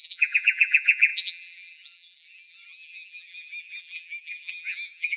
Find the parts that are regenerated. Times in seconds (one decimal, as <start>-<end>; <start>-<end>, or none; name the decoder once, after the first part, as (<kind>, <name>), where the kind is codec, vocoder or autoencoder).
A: 0.0-5.2 (vocoder, BigVGAN v2)